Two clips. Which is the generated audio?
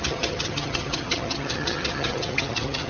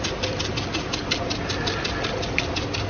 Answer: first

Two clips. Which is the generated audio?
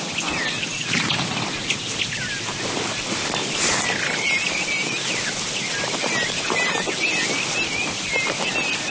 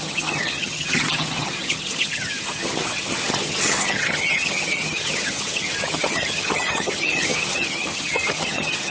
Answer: second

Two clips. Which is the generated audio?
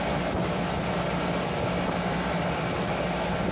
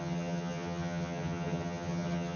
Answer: second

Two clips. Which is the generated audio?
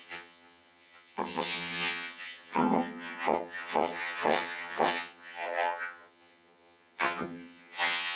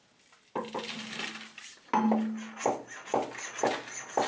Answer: first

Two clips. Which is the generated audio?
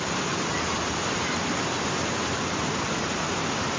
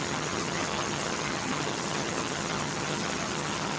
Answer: second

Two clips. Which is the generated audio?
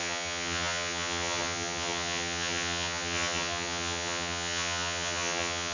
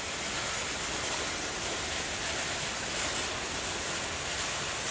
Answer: first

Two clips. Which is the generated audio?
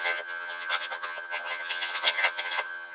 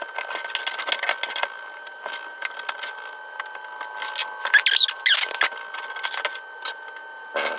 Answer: first